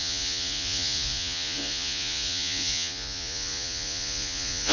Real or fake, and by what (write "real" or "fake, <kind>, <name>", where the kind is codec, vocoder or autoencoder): fake, vocoder, Vocos